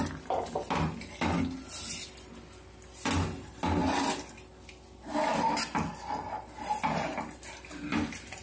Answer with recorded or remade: recorded